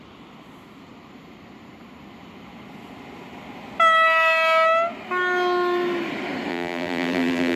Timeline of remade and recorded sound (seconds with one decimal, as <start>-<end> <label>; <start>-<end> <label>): 0.0-6.5 recorded; 6.5-7.6 remade